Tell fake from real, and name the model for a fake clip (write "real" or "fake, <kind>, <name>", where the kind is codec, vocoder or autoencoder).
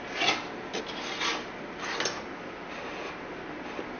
real